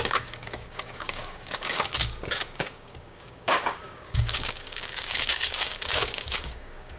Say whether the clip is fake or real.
fake